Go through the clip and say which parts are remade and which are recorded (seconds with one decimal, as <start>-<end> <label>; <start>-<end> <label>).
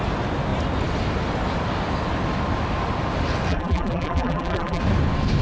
0.0-3.5 recorded; 3.5-4.8 remade; 4.8-5.4 recorded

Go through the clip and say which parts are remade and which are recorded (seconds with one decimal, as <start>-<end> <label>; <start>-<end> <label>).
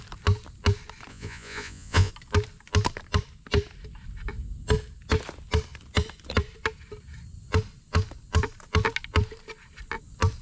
0.0-1.1 recorded; 1.1-2.1 remade; 2.1-10.4 recorded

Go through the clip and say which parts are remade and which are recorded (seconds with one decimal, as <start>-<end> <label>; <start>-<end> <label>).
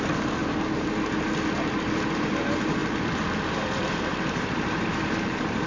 0.0-0.4 remade; 0.4-2.2 recorded; 2.2-2.8 remade; 2.8-3.5 recorded; 3.5-5.7 remade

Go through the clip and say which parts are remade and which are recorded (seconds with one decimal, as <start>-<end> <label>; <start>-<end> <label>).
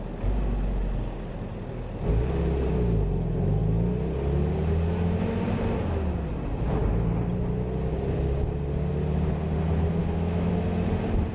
0.0-10.0 recorded; 10.0-10.5 remade; 10.5-11.3 recorded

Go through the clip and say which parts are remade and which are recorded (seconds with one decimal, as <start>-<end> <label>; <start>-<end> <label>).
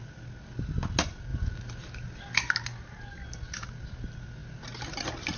0.0-5.4 recorded